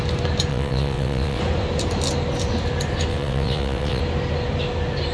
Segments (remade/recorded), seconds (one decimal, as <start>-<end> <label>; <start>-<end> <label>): 0.0-0.5 recorded; 0.5-1.4 remade; 1.4-3.1 recorded; 3.1-4.0 remade; 4.0-5.1 recorded